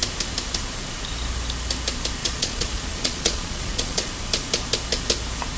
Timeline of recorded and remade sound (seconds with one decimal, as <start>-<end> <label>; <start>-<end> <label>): 0.0-2.2 recorded; 2.2-4.1 remade; 4.1-5.6 recorded